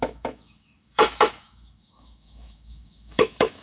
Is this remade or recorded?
remade